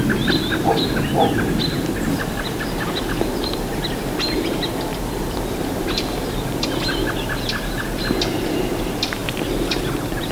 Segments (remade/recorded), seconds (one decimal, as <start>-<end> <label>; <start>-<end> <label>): 0.0-10.3 recorded